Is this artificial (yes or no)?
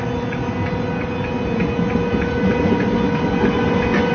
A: no